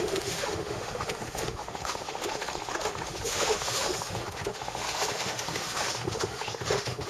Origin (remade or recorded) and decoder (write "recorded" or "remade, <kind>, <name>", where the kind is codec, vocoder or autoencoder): remade, autoencoder, DAC-VAE